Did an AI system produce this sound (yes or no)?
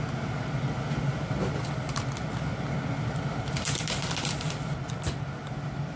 yes